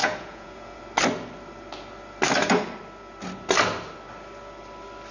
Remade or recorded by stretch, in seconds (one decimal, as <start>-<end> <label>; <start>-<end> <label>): 0.0-0.8 remade; 0.8-5.1 recorded